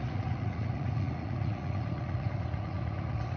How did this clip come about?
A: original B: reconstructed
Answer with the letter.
B